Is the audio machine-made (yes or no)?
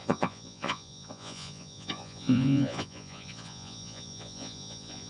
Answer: yes